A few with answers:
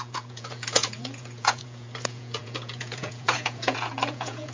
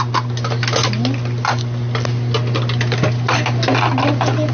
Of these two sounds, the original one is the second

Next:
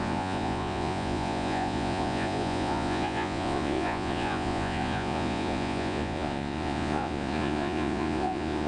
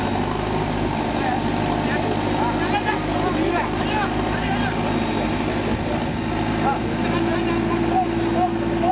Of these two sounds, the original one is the second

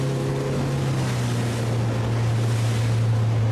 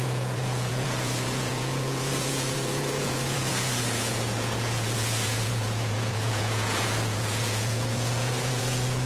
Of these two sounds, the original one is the first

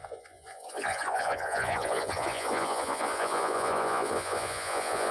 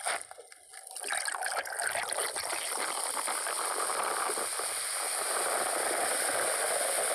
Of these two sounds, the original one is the second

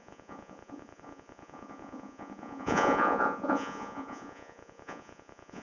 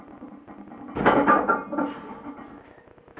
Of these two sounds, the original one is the second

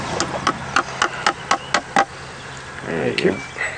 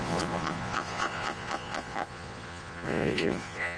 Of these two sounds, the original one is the first